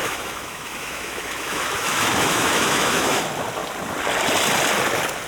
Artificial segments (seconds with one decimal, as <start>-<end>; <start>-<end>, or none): 0.0-3.2